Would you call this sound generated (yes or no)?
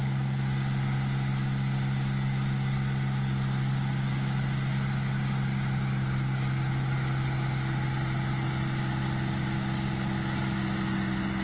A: no